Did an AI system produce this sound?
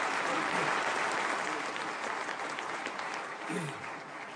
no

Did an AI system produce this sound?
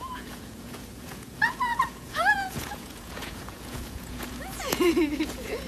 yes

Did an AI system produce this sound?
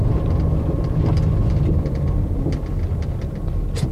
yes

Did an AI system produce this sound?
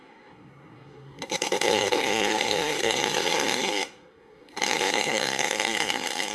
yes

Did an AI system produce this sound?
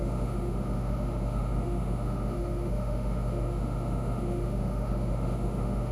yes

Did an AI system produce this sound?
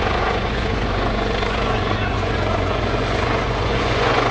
yes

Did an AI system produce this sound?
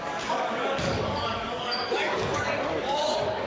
yes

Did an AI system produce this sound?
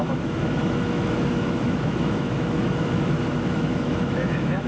yes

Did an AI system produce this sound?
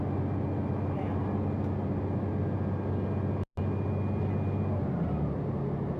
no